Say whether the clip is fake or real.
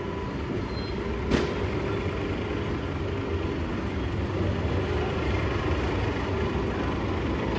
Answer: real